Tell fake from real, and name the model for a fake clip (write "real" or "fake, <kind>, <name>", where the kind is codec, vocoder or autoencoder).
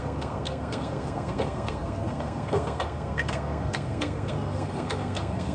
fake, codec, SNAC